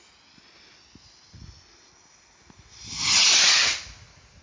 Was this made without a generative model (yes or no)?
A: yes